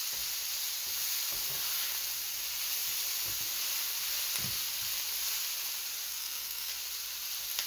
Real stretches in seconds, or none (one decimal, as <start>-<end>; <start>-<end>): 0.0-6.1; 6.7-7.7